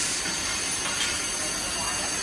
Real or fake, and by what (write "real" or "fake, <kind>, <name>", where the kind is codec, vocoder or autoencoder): real